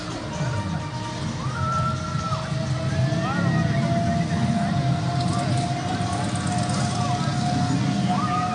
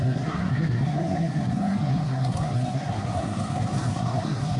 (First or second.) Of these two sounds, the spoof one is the second